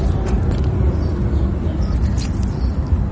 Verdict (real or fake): real